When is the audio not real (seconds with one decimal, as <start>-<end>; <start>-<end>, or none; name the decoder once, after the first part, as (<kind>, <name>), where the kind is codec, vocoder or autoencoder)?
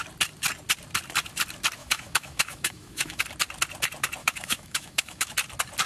1.8-3.2 (autoencoder, DAC-VAE); 4.2-5.3